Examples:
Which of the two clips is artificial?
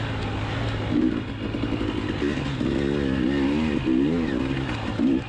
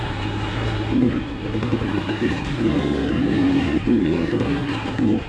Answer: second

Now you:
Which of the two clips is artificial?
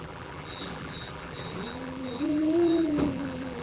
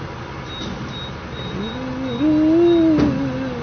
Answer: first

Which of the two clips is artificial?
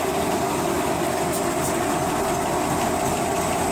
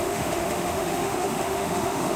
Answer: second